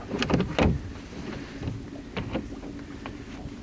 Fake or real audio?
real